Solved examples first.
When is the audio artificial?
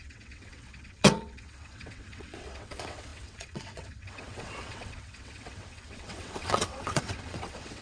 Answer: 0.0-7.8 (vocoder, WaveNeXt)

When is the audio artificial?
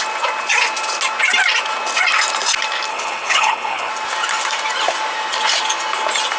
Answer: 2.9-3.9 (codec, HILCodec)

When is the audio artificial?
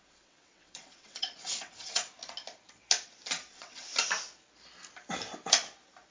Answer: 0.0-2.0 (vocoder, WaveNeXt); 3.5-3.9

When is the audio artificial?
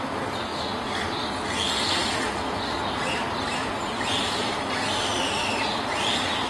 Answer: none